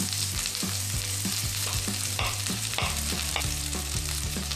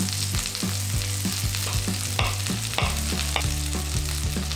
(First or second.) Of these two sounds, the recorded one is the second